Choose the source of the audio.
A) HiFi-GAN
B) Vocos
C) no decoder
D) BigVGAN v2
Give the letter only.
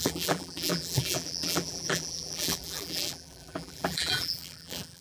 D